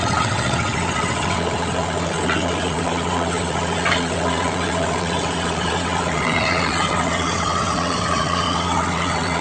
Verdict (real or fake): fake